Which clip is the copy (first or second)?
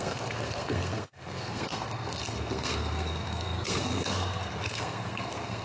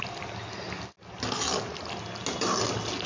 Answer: first